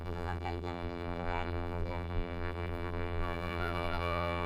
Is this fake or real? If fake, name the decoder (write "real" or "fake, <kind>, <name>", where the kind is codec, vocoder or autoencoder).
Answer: fake, vocoder, BigVGAN v2